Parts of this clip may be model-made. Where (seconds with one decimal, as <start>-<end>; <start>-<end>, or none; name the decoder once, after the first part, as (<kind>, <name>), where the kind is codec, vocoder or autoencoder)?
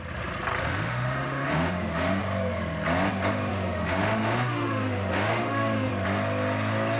0.6-2.2 (autoencoder, DAC-VAE); 3.5-5.9